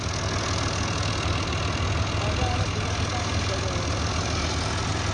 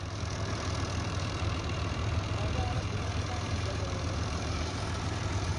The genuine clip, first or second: first